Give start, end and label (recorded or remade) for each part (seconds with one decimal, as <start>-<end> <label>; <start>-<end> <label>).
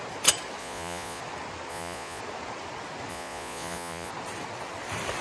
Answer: 0.0-0.6 recorded; 0.6-1.2 remade; 1.2-1.7 recorded; 1.7-2.2 remade; 2.2-3.1 recorded; 3.1-4.1 remade; 4.1-5.2 recorded